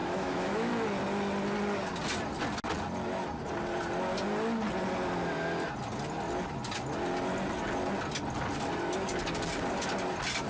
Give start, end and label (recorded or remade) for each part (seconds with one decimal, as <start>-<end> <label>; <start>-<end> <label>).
0.0-0.7 remade; 0.7-10.5 recorded